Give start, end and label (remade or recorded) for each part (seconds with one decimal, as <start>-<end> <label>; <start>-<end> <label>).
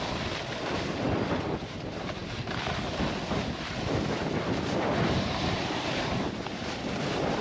0.0-7.4 recorded